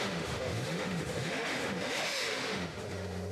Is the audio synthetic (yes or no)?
yes